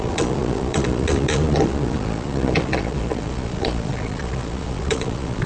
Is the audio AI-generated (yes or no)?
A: yes